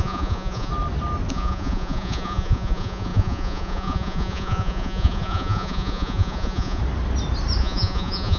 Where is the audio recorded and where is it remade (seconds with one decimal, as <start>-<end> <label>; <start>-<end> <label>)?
0.0-0.7 remade; 0.7-1.3 recorded; 1.3-6.8 remade; 6.8-7.6 recorded; 7.6-8.4 remade